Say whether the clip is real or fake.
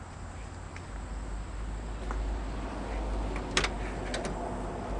real